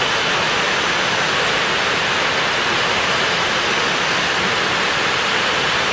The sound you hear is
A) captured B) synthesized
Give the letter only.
A